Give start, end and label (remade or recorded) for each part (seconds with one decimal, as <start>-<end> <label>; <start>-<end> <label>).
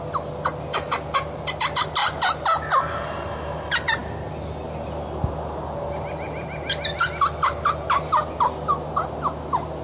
0.0-9.8 recorded